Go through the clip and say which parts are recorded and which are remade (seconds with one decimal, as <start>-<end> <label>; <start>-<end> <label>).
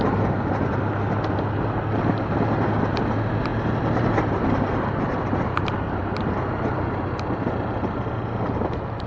0.0-9.1 recorded